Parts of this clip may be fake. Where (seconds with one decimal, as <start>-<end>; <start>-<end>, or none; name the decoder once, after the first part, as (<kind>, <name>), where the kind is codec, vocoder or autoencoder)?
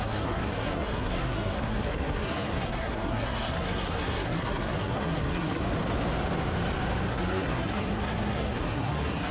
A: 0.0-5.6 (codec, SNAC); 7.1-9.3